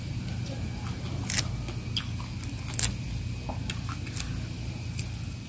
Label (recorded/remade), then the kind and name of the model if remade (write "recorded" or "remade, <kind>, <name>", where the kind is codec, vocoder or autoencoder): recorded